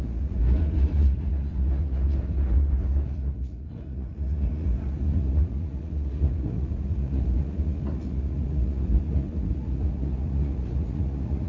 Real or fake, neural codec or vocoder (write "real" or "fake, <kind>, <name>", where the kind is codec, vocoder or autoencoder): fake, vocoder, Vocos